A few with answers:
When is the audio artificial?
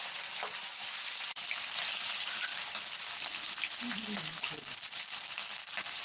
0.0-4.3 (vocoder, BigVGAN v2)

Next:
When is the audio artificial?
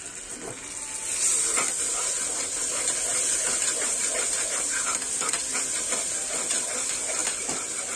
none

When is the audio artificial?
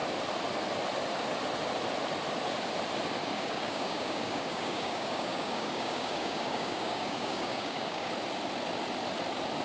3.2-8.1 (codec, DAC)